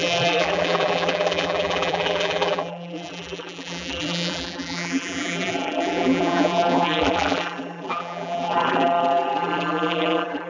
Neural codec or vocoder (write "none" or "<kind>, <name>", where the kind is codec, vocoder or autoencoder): vocoder, BigVGAN v2